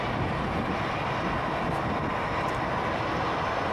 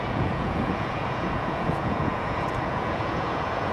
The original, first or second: first